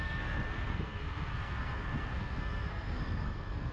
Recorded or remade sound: remade